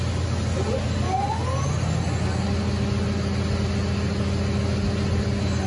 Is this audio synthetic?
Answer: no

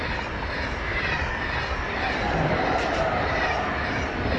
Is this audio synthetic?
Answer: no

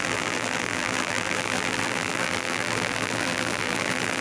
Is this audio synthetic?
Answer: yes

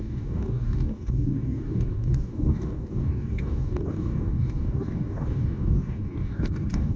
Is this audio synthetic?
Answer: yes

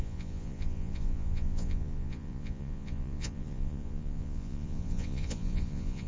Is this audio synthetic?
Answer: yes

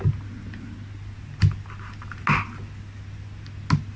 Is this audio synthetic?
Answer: no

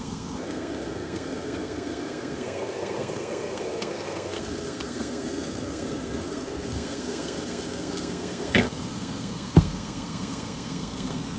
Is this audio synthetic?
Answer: yes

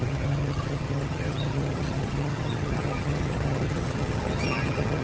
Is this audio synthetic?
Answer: yes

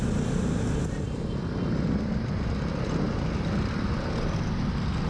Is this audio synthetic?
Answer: no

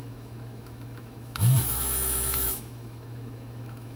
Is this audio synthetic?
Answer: yes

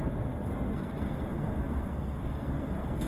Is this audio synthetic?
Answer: yes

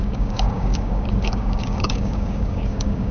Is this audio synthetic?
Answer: yes